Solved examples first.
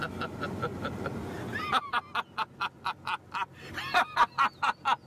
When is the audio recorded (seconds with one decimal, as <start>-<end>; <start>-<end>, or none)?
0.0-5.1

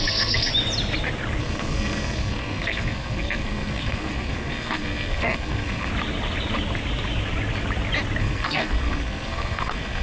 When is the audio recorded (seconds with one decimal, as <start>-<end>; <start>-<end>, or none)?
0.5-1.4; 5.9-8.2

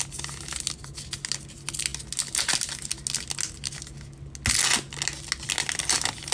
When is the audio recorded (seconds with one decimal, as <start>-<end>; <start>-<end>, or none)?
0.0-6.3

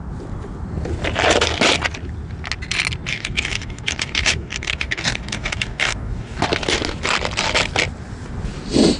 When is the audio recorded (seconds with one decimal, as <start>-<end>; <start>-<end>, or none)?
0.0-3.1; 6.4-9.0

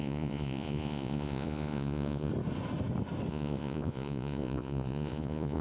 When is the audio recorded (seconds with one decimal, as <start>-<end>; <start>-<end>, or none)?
2.3-3.3